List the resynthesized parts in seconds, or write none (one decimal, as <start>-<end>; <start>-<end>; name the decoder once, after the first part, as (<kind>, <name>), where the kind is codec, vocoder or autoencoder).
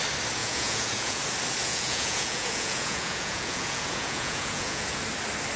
0.4-1.2 (vocoder, Vocos); 1.6-5.0